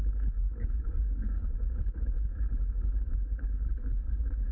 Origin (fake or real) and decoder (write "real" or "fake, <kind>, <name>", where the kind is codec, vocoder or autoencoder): fake, codec, HILCodec